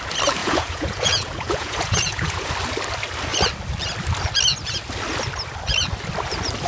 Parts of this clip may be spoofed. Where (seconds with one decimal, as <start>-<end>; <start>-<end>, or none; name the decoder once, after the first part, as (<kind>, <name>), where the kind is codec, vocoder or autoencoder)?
0.4-2.5 (vocoder, Vocos)